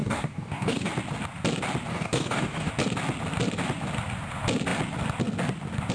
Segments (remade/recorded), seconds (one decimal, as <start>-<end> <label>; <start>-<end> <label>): 0.0-0.9 remade; 0.9-1.9 recorded; 1.9-2.7 remade; 2.7-5.9 recorded